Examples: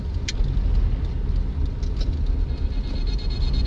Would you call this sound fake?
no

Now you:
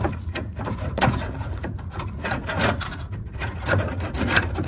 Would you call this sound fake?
yes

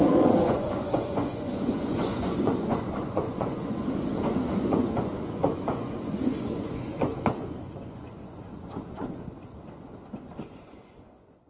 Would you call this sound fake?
yes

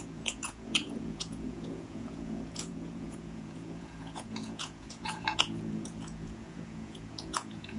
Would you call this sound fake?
yes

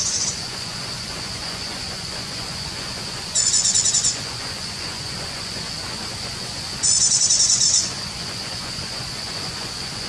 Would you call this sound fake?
yes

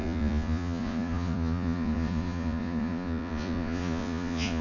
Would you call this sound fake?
yes